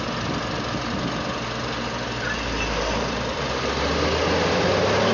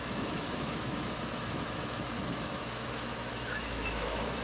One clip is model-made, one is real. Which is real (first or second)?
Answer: first